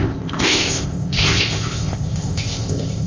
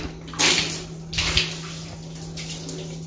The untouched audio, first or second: second